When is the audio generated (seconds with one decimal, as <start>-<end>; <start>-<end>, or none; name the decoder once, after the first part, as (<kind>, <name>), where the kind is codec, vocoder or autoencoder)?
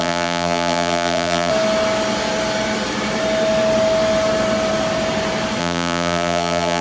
0.0-1.5 (vocoder, BigVGAN v2); 5.6-6.8